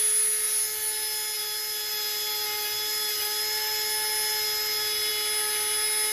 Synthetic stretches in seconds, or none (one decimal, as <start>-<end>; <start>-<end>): none